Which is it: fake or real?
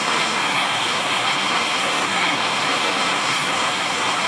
fake